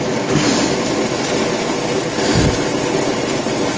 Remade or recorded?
remade